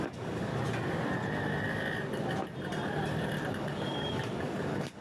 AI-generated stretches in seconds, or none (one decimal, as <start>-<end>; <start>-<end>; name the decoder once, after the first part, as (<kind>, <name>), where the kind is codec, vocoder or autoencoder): 0.0-0.5 (codec, DAC); 3.5-5.0